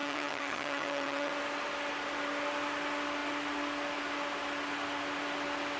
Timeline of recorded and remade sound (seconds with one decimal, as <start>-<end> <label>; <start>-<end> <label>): 0.0-1.3 remade; 1.3-5.8 recorded